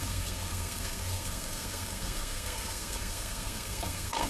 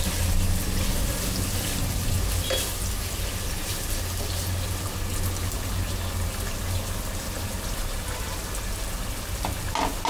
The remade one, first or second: first